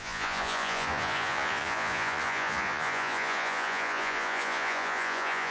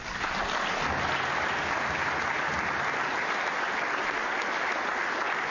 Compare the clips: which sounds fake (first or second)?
first